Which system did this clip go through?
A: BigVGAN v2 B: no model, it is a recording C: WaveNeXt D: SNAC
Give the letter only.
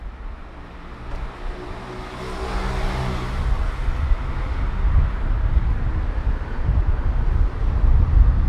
B